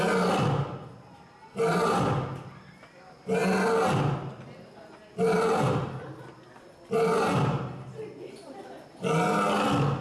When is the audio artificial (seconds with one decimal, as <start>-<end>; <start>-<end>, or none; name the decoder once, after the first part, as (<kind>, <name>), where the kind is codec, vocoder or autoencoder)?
none